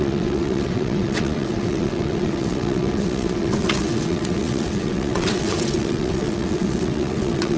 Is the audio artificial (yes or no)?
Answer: yes